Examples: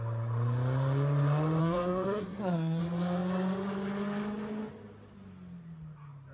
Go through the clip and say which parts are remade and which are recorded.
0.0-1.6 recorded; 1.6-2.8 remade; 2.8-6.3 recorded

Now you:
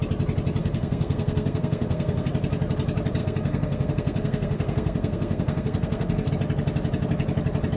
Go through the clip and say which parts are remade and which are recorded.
0.0-0.6 recorded; 0.6-2.3 remade; 2.3-3.2 recorded; 3.2-6.3 remade; 6.3-7.8 recorded

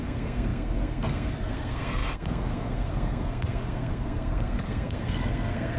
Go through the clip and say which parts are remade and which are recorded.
0.0-5.8 remade